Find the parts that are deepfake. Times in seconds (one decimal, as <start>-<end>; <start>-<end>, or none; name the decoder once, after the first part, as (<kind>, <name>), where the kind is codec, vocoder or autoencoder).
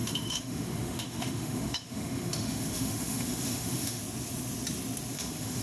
0.0-4.0 (autoencoder, DAC-VAE); 5.1-5.6